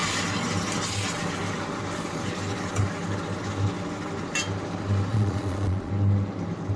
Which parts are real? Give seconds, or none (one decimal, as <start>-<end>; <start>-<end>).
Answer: 0.0-5.1; 5.9-6.8